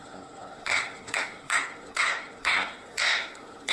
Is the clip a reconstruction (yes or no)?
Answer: yes